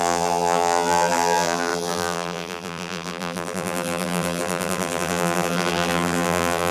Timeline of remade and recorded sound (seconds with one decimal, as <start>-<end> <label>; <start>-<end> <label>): 0.0-6.7 remade